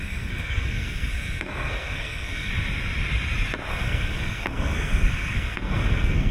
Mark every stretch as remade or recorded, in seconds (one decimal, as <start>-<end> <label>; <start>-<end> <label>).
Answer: 0.0-2.5 remade; 2.5-3.7 recorded; 3.7-6.3 remade

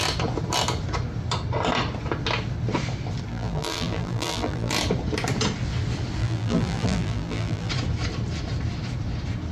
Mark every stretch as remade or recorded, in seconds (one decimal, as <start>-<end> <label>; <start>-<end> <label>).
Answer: 0.0-3.3 recorded; 3.3-4.7 remade; 4.7-6.2 recorded; 6.2-7.7 remade; 7.7-9.5 recorded